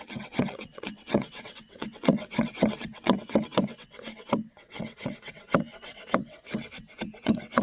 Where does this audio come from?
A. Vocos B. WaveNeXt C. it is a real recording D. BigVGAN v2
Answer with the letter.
B